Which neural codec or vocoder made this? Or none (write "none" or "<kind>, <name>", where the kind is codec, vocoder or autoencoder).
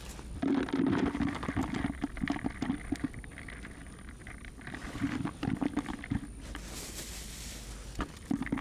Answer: none